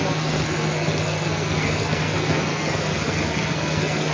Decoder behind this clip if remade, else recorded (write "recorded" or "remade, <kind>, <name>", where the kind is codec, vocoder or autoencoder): remade, codec, SNAC